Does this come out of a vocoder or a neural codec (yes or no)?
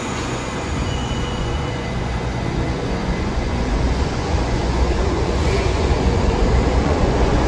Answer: yes